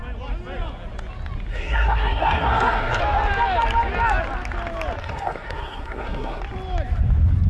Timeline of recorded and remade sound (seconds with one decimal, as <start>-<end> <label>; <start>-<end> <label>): 0.0-1.5 recorded; 1.5-3.0 remade; 3.0-5.0 recorded; 5.0-6.4 remade; 6.4-7.5 recorded

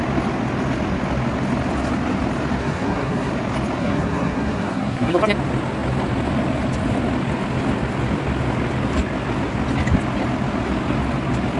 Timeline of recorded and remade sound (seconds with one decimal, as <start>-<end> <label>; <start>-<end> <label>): 0.0-2.6 recorded; 2.6-3.3 remade; 3.3-3.8 recorded; 3.8-5.2 remade; 5.2-11.6 recorded

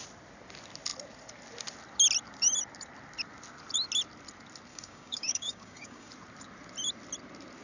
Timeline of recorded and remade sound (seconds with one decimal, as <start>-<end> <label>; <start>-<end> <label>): 0.0-4.7 recorded; 4.7-6.1 remade; 6.1-7.6 recorded

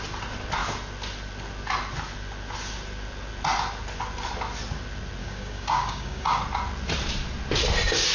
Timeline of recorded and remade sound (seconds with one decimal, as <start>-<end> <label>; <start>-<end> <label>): 0.0-5.2 recorded; 5.2-6.4 remade; 6.4-8.1 recorded

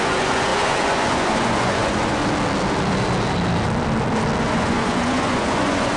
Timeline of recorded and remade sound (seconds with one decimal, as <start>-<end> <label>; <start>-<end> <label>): 0.0-2.2 remade; 2.2-4.4 recorded; 4.4-6.0 remade

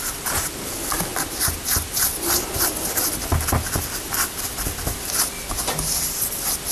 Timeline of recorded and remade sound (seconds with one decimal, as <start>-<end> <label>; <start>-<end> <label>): 0.0-6.7 recorded

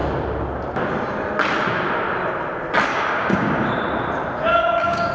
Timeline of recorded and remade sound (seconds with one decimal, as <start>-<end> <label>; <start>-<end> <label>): 0.0-2.9 recorded; 2.9-3.7 remade; 3.7-4.5 recorded; 4.5-5.1 remade